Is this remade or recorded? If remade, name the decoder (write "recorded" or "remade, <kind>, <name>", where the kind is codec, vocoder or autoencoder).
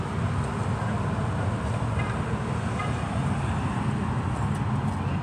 recorded